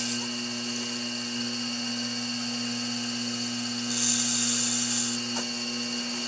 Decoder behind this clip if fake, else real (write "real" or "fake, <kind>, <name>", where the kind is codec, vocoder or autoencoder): real